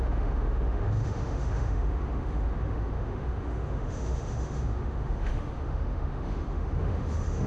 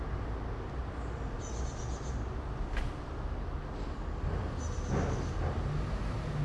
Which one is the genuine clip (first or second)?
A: second